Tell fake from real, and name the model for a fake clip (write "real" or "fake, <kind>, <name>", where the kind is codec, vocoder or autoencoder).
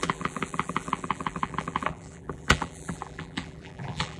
fake, vocoder, BigVGAN v2